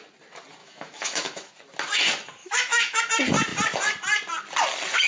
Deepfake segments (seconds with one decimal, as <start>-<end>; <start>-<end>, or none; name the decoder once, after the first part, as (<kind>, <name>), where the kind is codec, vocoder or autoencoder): 0.6-1.5 (autoencoder, DAC-VAE); 2.4-3.0